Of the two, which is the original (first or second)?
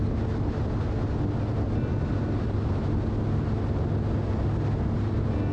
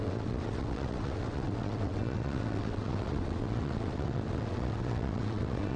first